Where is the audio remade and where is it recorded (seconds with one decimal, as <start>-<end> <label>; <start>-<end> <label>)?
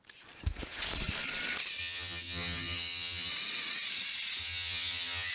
0.0-1.8 recorded; 1.8-3.3 remade; 3.3-4.4 recorded; 4.4-5.3 remade